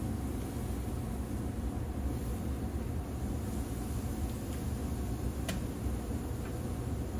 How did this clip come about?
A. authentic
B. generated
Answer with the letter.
A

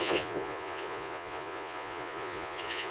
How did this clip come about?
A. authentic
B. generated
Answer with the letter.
B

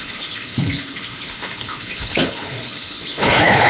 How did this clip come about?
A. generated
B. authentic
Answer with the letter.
A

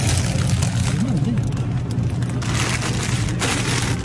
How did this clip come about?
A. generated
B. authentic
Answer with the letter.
B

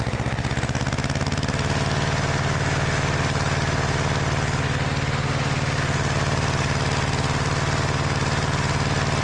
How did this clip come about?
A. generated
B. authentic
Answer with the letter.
B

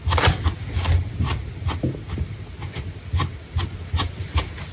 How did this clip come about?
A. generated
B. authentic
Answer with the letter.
B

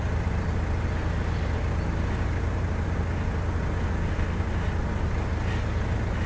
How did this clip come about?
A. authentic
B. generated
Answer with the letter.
A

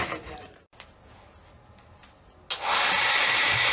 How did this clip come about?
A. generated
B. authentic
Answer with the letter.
B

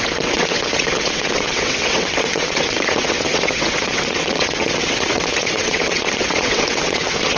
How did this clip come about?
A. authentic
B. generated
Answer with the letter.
B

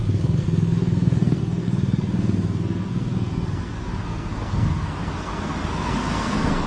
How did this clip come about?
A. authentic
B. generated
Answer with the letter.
B